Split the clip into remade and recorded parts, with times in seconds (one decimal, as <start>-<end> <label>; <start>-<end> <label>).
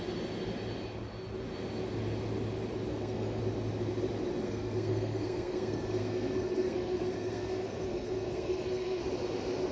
0.0-2.9 recorded; 2.9-3.4 remade; 3.4-4.4 recorded; 4.4-9.0 remade; 9.0-9.7 recorded